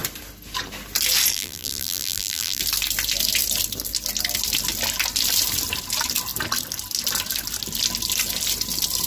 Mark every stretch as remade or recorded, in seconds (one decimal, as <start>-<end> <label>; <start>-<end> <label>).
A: 0.0-1.3 recorded; 1.3-2.6 remade; 2.6-9.1 recorded